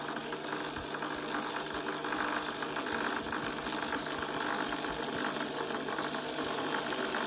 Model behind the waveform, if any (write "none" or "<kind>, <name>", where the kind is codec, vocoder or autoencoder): none